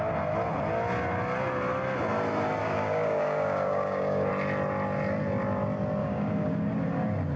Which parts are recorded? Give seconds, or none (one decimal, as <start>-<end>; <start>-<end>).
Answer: 0.0-2.6; 4.3-6.0; 6.6-7.4